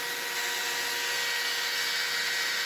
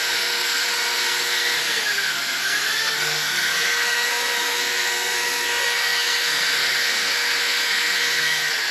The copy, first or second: second